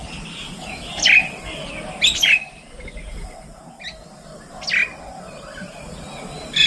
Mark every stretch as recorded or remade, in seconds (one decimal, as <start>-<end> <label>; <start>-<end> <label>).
0.0-6.7 recorded